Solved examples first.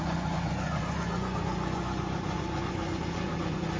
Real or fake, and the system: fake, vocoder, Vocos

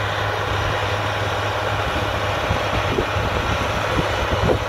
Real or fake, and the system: real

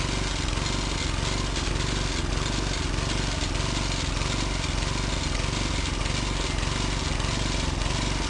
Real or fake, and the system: real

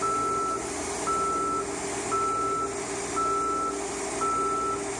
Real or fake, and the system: real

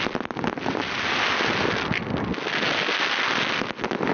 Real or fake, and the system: real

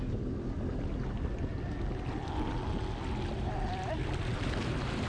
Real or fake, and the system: real